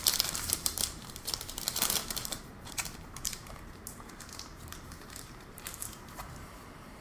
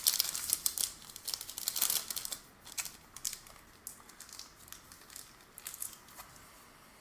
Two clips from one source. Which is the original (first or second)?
second